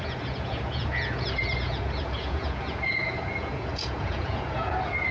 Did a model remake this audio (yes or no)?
yes